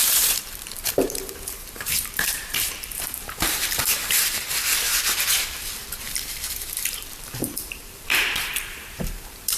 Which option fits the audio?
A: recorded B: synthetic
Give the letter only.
B